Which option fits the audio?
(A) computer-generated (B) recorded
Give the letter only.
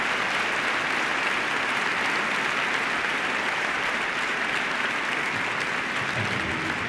B